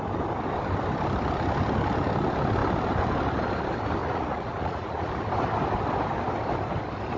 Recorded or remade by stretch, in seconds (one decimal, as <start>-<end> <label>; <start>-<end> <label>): 0.0-4.0 recorded; 4.0-5.1 remade; 5.1-7.2 recorded